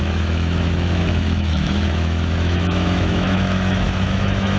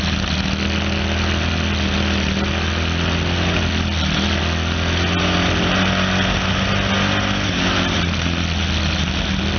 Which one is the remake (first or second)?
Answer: first